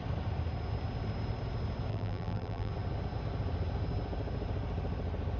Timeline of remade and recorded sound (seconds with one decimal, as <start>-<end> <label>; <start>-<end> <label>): 0.0-1.9 recorded; 1.9-2.7 remade; 2.7-5.4 recorded